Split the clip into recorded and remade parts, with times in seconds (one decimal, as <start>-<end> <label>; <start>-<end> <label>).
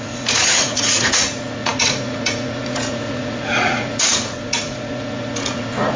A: 0.0-6.0 remade